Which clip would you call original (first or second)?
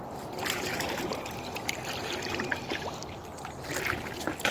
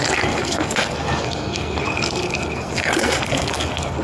first